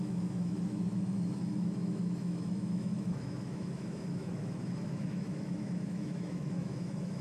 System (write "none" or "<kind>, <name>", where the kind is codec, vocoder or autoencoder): autoencoder, DAC-VAE